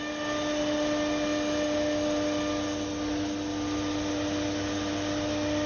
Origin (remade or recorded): recorded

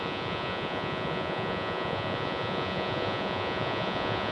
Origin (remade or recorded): remade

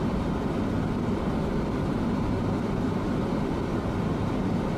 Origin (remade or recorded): remade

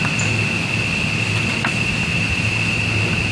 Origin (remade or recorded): recorded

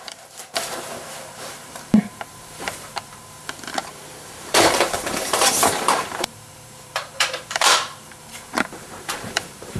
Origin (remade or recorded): remade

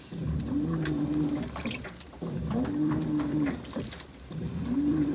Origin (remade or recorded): remade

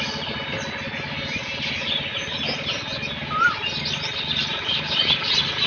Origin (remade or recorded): recorded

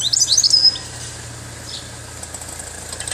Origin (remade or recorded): remade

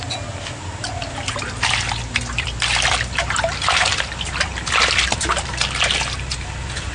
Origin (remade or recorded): recorded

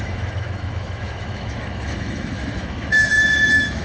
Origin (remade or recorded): remade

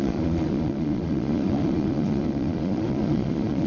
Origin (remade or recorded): remade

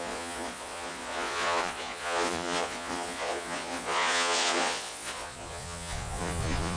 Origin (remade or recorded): remade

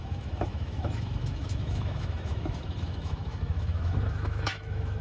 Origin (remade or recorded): remade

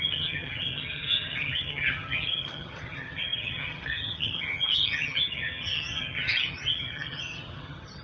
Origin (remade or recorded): remade